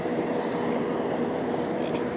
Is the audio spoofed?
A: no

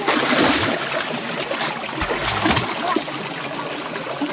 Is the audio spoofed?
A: no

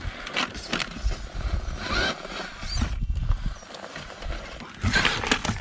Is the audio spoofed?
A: no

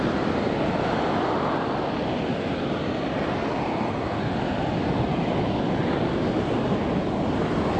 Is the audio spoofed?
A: no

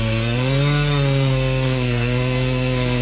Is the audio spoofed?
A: yes